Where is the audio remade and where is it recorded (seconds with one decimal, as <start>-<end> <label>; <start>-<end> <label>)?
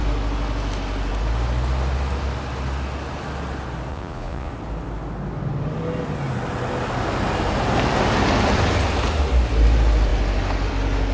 0.0-3.9 recorded; 3.9-4.5 remade; 4.5-11.1 recorded